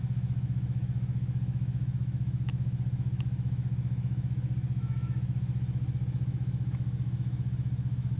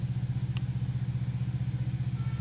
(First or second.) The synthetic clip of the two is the first